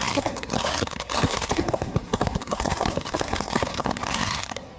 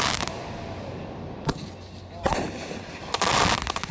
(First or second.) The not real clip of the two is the first